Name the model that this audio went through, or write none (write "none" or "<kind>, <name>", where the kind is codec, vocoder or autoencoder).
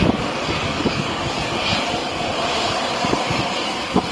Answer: codec, DAC